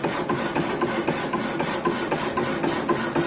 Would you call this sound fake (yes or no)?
no